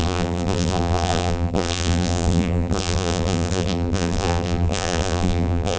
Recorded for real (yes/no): no